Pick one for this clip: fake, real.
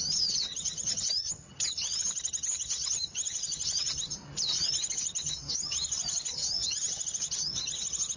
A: fake